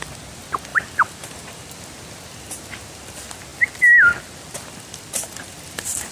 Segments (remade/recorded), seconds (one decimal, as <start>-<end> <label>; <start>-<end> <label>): 0.0-0.7 recorded; 0.7-1.7 remade; 1.7-6.1 recorded